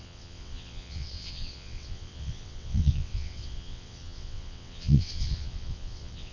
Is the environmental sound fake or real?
fake